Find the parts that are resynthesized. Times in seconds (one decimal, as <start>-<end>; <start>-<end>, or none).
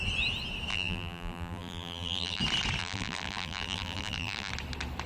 0.7-2.4; 2.8-4.5